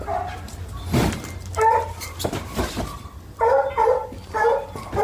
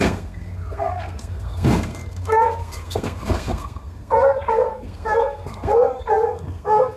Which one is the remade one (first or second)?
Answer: second